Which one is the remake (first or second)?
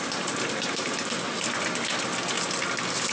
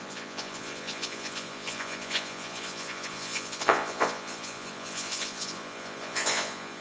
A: second